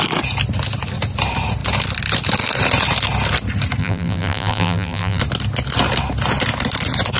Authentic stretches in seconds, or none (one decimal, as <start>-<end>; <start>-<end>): 0.0-3.8; 5.2-7.2